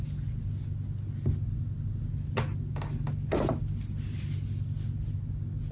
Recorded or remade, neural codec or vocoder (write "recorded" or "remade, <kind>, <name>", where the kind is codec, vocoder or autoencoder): recorded